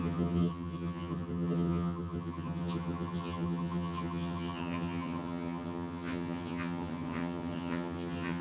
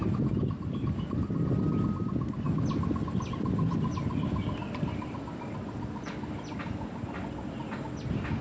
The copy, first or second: first